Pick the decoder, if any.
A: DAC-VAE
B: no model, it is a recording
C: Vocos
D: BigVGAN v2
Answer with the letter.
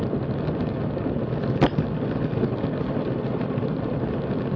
B